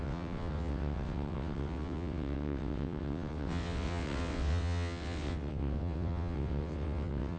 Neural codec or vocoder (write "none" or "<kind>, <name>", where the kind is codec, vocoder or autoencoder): vocoder, WaveNeXt